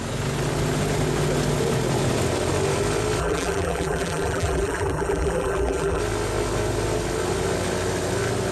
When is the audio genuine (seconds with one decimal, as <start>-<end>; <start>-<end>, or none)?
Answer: 0.0-3.2; 6.0-8.5